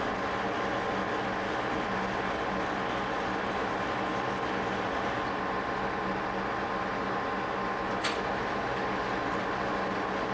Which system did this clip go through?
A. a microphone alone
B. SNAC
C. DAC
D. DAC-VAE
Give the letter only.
A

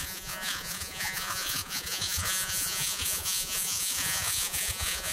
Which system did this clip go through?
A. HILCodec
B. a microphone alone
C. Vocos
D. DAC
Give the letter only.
C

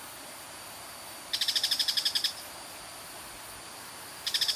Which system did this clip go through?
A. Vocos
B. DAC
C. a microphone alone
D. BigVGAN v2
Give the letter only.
C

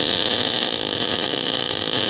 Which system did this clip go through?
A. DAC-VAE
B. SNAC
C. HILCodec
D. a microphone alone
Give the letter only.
A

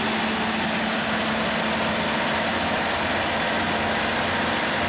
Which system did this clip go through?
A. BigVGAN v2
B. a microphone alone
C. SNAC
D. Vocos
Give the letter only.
B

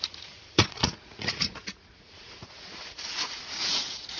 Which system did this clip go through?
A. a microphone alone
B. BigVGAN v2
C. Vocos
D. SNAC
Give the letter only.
C